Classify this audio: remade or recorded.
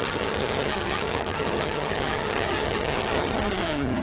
remade